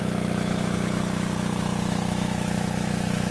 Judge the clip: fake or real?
fake